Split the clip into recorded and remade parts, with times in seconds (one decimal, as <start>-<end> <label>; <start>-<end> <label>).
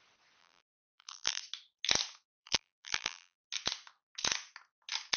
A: 0.0-0.4 recorded; 0.4-1.4 remade; 1.4-2.3 recorded; 2.3-3.4 remade; 3.4-5.2 recorded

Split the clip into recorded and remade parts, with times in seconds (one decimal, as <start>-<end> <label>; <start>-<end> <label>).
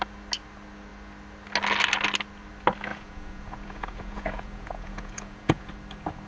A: 0.0-2.9 recorded; 2.9-5.7 remade; 5.7-6.3 recorded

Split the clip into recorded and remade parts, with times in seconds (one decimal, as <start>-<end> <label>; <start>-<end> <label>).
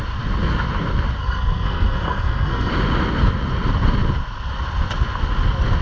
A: 0.0-1.2 recorded; 1.2-2.7 remade; 2.7-5.8 recorded